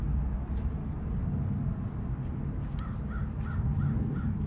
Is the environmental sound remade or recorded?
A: recorded